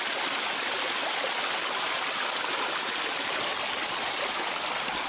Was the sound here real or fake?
real